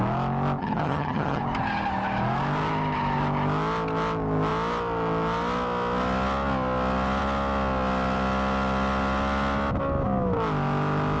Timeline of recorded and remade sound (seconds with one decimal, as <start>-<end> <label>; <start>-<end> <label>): 0.0-0.6 recorded; 0.6-1.4 remade; 1.4-11.2 recorded

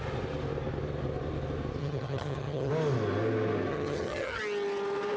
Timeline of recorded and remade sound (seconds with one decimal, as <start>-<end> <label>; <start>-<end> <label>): 0.0-1.8 recorded; 1.8-2.7 remade; 2.7-3.7 recorded; 3.7-4.4 remade; 4.4-5.2 recorded

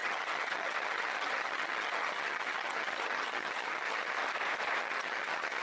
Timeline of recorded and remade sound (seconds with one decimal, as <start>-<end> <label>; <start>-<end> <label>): 0.0-4.2 remade; 4.2-4.8 recorded; 4.8-5.6 remade